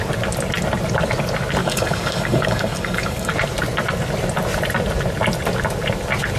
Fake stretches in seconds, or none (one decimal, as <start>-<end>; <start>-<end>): 1.6-3.3